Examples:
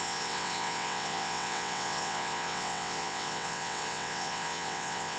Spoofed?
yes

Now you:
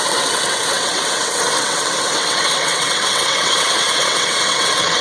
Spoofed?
yes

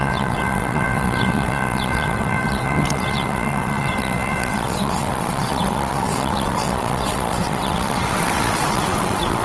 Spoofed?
yes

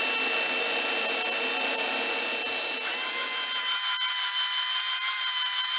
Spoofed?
no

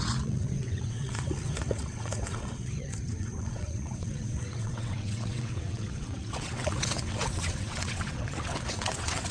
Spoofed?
yes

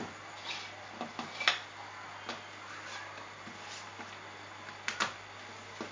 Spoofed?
no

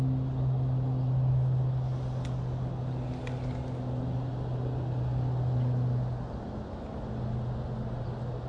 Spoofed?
no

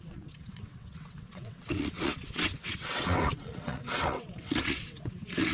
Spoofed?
yes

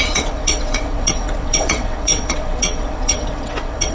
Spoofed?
yes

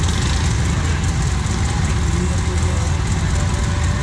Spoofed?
no